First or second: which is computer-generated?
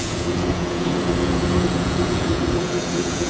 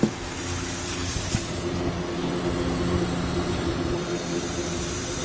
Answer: first